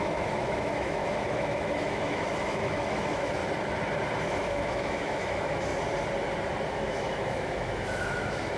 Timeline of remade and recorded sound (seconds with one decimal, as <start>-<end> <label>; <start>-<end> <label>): 0.0-3.4 remade; 3.4-4.2 recorded; 4.2-5.7 remade; 5.7-6.7 recorded; 6.7-8.6 remade